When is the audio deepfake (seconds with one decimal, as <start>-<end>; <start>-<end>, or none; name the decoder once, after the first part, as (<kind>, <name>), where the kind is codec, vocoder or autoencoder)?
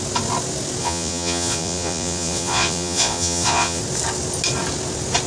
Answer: 0.8-3.8 (vocoder, Vocos)